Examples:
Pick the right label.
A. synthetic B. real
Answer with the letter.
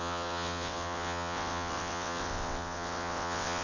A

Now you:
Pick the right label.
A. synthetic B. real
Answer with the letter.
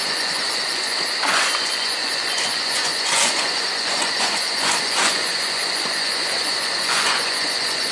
A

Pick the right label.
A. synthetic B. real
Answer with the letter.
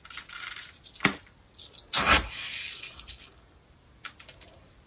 B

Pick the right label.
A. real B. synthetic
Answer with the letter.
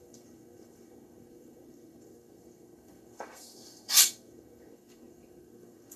B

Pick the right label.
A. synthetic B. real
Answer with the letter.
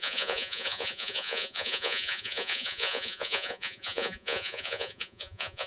A